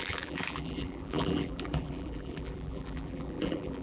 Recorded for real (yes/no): no